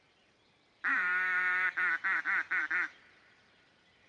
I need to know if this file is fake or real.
fake